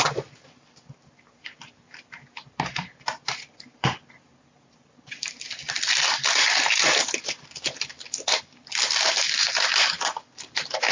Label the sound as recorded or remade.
recorded